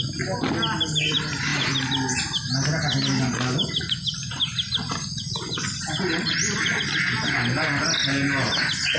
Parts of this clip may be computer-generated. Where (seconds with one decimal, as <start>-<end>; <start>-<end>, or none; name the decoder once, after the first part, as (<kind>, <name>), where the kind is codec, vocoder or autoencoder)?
none